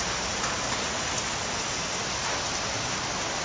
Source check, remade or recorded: recorded